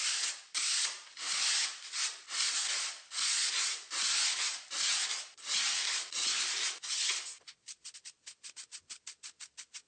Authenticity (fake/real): real